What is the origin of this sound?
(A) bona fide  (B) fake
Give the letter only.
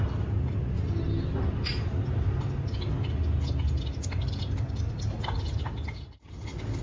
A